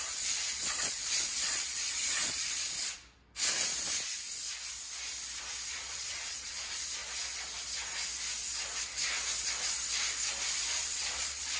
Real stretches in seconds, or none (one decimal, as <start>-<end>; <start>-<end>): 3.0-5.7; 7.0-10.7